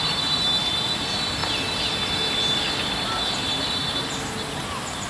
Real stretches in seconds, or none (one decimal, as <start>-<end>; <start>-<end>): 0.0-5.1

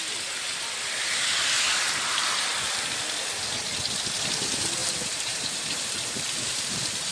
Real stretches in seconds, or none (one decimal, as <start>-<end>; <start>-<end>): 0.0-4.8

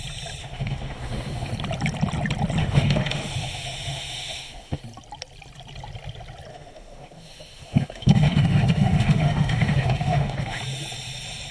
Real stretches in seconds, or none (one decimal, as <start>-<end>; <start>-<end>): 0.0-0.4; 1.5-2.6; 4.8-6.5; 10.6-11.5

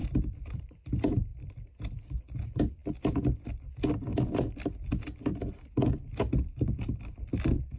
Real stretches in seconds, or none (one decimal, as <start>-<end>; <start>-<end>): 0.8-1.3; 2.2-7.8

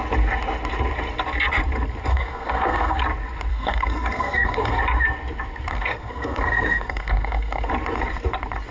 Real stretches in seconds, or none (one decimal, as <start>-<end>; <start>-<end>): 0.0-2.1; 3.0-3.5; 4.8-5.7; 7.7-8.7

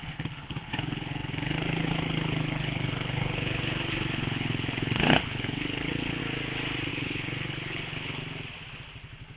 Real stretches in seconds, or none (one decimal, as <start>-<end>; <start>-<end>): 6.2-6.9; 8.2-9.4